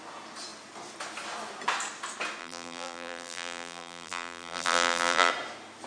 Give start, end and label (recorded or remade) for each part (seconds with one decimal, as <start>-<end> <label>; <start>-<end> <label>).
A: 0.0-2.4 recorded; 2.4-5.3 remade; 5.3-5.9 recorded